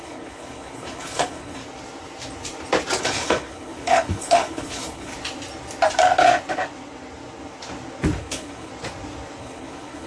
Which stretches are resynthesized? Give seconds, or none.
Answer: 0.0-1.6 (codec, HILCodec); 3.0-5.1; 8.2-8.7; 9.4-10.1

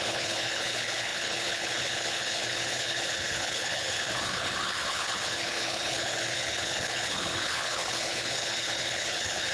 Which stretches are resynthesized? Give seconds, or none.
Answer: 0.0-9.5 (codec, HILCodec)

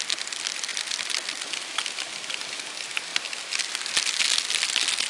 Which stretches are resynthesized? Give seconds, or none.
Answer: none